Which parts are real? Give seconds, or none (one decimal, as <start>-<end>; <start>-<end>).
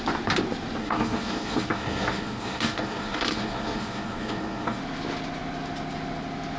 0.0-0.8; 4.8-6.6